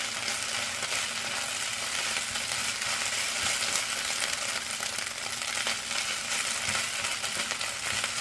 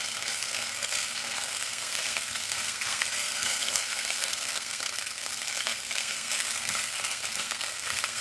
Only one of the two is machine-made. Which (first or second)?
second